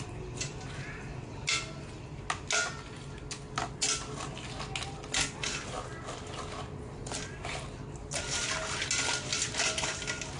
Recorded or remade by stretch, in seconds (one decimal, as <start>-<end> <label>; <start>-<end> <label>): 0.0-10.4 recorded